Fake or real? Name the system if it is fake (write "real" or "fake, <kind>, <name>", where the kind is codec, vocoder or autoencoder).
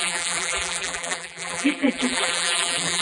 fake, vocoder, BigVGAN v2